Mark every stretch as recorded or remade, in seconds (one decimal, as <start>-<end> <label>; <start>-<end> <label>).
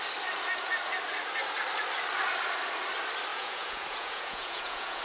0.0-3.3 recorded; 3.3-5.0 remade